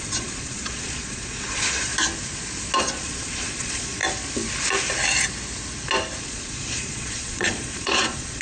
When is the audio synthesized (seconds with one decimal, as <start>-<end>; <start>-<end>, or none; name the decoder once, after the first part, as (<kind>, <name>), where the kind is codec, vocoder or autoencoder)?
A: 0.0-1.9 (vocoder, Vocos); 2.8-4.0; 6.2-8.4